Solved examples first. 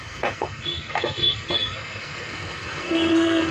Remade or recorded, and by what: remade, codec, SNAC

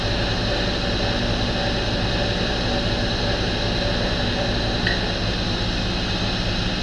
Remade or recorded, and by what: recorded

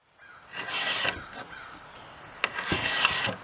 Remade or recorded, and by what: recorded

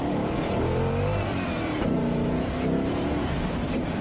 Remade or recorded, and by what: remade, vocoder, BigVGAN v2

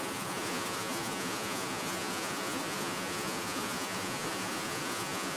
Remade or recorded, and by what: remade, vocoder, Vocos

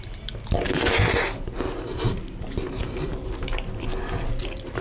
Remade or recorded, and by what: remade, vocoder, BigVGAN v2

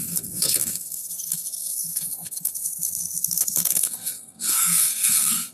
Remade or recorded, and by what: remade, codec, SNAC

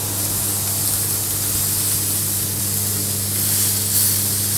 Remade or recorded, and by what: recorded